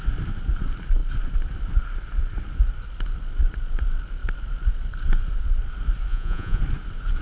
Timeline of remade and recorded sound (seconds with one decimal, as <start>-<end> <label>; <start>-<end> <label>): 0.0-6.1 recorded; 6.1-6.6 remade; 6.6-7.2 recorded